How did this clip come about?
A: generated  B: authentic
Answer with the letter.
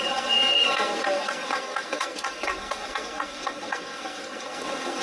A